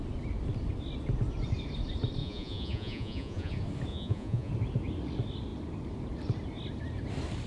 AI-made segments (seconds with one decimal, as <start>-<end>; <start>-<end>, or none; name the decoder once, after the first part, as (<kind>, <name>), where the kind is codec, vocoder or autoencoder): 2.2-3.5 (vocoder, Vocos); 3.9-4.5